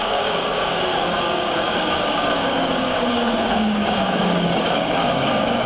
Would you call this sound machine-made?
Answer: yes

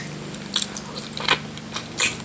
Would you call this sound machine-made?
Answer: no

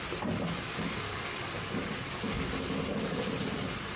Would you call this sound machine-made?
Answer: no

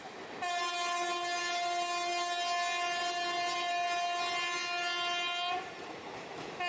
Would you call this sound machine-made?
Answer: no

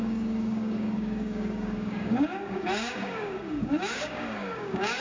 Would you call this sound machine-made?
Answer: yes